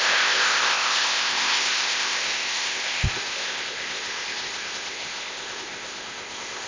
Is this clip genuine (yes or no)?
no